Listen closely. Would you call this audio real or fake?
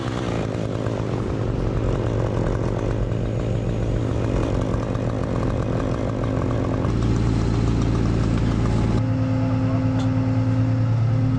real